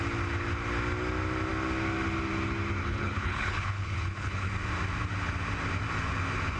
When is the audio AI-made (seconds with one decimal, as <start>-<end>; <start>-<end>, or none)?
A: 2.8-4.5